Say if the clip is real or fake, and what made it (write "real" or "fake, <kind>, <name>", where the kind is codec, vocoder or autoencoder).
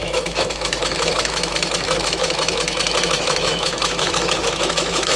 fake, autoencoder, DAC-VAE